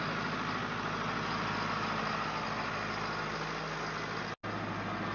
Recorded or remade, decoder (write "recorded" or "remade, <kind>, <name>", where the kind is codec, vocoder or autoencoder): recorded